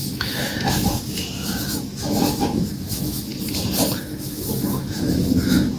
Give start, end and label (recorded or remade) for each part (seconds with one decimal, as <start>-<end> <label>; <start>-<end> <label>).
0.0-3.3 remade; 3.3-4.0 recorded; 4.0-5.8 remade